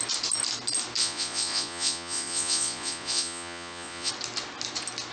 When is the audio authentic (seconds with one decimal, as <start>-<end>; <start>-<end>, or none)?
0.0-1.0; 4.1-5.1